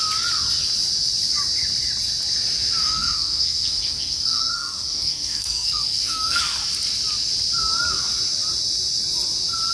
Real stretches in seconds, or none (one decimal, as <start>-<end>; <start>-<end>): 0.0-2.8; 6.4-9.7